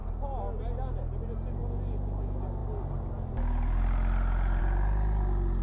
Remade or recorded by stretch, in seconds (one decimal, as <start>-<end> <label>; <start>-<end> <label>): 0.0-5.6 recorded